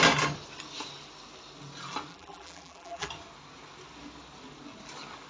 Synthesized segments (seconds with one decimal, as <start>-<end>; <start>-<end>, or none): 2.1-3.1